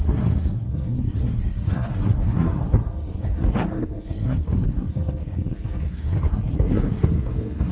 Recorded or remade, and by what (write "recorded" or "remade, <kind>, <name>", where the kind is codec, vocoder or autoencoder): remade, codec, SNAC